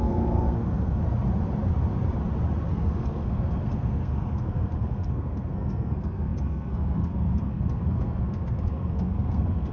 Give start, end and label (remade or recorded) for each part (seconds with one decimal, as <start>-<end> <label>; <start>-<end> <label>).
0.0-1.0 remade; 1.0-2.7 recorded; 2.7-9.7 remade